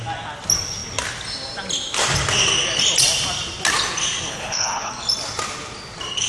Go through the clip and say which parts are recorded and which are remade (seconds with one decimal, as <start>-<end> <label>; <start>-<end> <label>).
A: 0.0-4.3 recorded; 4.3-4.9 remade; 4.9-6.3 recorded